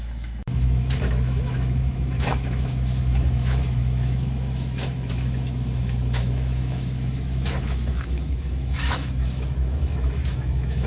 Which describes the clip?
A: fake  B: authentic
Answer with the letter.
A